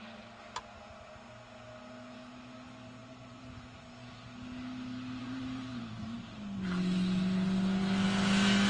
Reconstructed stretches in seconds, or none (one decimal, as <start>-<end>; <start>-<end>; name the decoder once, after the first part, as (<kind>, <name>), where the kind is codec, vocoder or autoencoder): 3.0-3.8 (vocoder, BigVGAN v2); 5.2-6.2